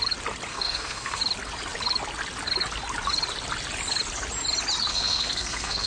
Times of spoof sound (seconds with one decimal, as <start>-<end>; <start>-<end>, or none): 0.5-1.2; 4.9-5.9